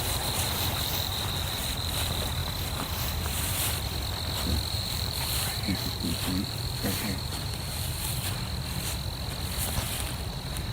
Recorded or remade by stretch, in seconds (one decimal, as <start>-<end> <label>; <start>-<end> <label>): 0.0-2.4 remade; 2.4-4.7 recorded; 4.7-8.1 remade; 8.1-10.7 recorded